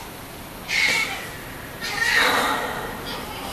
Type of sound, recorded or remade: recorded